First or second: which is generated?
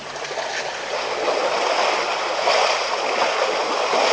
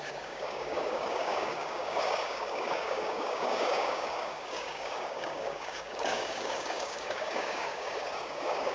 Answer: second